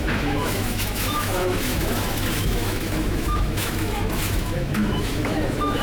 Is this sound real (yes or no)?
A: no